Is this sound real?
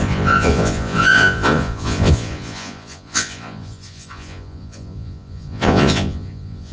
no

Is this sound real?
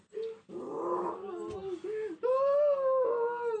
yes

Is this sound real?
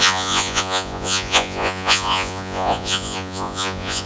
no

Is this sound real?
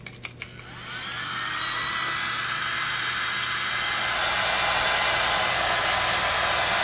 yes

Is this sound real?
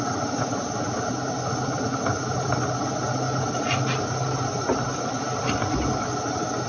yes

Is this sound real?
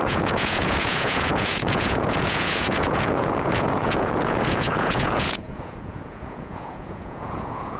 no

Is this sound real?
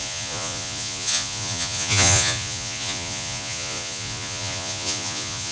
no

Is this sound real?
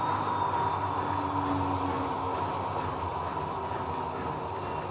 yes